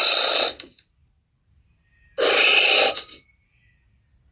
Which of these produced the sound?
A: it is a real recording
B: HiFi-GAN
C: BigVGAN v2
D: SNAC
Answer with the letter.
A